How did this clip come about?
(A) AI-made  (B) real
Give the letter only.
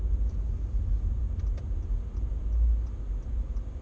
B